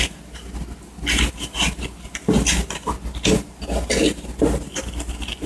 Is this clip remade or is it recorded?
recorded